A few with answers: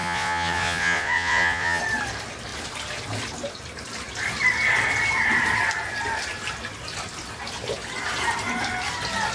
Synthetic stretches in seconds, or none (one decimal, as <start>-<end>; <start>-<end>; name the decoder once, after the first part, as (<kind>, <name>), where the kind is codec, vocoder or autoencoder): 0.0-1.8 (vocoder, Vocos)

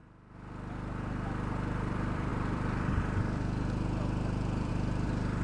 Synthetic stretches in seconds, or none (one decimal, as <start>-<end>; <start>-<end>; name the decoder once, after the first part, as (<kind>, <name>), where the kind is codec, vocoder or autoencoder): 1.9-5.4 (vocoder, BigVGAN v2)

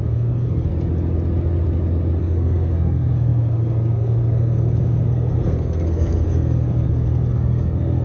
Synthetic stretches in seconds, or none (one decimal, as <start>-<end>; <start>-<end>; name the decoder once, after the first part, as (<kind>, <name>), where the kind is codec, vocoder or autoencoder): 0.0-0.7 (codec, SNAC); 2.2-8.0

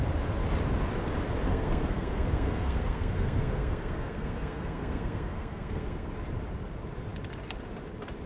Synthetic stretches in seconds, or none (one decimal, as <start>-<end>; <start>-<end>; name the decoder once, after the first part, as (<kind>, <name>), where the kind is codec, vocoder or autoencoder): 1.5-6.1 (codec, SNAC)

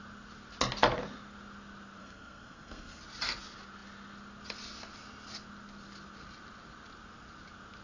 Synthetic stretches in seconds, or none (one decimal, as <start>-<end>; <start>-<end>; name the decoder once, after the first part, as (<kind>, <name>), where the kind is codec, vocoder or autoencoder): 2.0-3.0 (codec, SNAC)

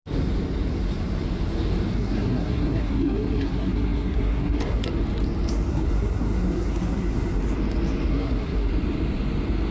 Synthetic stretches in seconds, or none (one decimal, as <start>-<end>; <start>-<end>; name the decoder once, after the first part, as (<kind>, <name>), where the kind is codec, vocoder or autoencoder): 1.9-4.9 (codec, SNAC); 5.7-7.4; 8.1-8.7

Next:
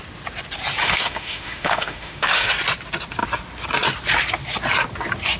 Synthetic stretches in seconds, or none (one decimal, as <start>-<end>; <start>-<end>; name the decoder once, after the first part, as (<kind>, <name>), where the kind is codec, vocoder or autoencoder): 0.8-2.5 (autoencoder, DAC-VAE)